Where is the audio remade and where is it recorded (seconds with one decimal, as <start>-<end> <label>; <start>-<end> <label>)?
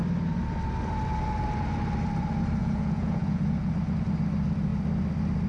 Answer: 0.0-2.6 recorded; 2.6-3.7 remade; 3.7-5.5 recorded